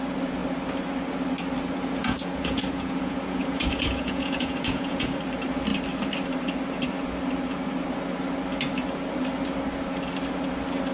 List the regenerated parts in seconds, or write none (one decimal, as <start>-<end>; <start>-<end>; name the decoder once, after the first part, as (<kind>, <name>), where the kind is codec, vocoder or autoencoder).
2.0-5.2 (vocoder, Vocos)